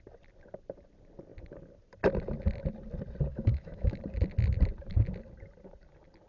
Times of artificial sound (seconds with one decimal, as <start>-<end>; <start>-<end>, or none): 3.3-4.0